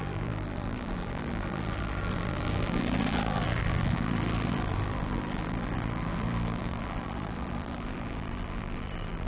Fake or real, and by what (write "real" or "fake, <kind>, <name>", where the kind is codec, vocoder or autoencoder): fake, vocoder, BigVGAN v2